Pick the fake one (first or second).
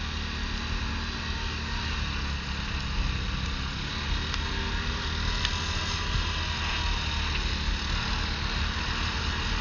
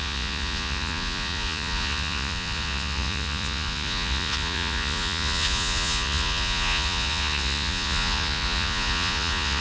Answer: second